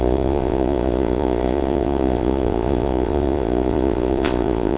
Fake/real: fake